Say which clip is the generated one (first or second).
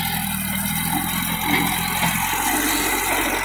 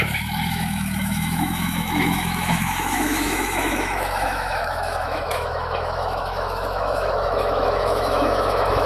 second